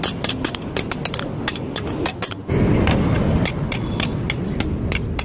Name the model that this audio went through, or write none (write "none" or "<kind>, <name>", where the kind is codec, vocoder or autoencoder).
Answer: none